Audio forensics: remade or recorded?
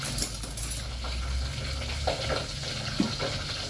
recorded